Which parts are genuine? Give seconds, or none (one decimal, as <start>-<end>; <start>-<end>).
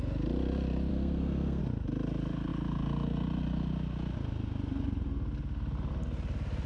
0.0-0.9; 1.6-6.7